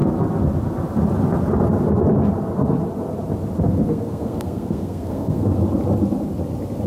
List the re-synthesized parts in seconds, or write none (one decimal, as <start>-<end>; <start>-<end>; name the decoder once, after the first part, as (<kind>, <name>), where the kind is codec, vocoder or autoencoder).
3.7-5.6 (codec, SNAC)